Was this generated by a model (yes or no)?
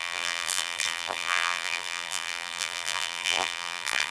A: yes